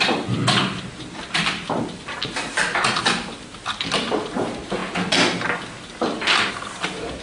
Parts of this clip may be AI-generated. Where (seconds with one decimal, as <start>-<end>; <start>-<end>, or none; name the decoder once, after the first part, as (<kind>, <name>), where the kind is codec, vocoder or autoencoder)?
0.0-4.8 (vocoder, BigVGAN v2); 6.5-7.2